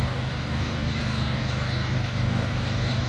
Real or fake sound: fake